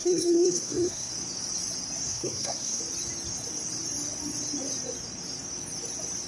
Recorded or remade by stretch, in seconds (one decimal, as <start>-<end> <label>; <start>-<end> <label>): 0.0-1.1 remade; 1.1-2.1 recorded; 2.1-2.8 remade; 2.8-6.3 recorded